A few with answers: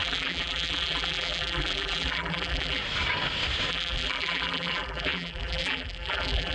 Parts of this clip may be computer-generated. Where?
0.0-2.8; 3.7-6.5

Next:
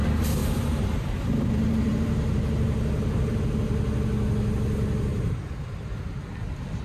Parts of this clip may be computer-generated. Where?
0.4-3.4; 5.1-5.9

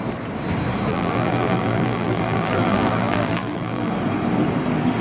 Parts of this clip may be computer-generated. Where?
0.9-3.9

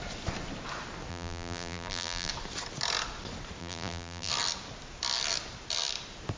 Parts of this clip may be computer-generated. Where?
1.1-2.3; 3.6-4.3

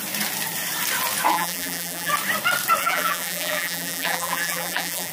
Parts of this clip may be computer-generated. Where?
1.3-2.1; 2.8-5.1

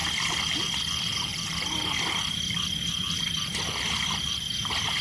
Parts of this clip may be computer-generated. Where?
1.3-4.3